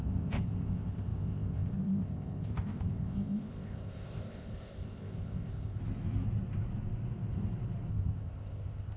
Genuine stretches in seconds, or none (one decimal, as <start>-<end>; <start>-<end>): 5.8-7.9